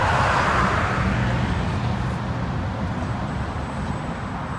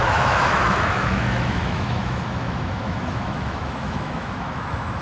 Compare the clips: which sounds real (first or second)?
first